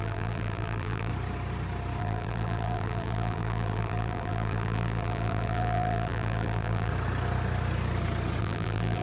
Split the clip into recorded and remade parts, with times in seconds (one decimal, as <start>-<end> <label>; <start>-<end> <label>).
0.0-1.1 remade; 1.1-2.0 recorded; 2.0-6.9 remade; 6.9-8.4 recorded; 8.4-9.0 remade